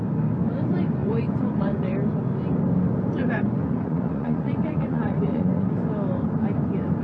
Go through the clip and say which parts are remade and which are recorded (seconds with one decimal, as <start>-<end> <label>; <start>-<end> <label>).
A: 0.0-1.0 recorded; 1.0-1.9 remade; 1.9-3.2 recorded; 3.2-5.7 remade; 5.7-7.0 recorded